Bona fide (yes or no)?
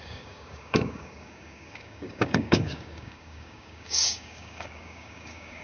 no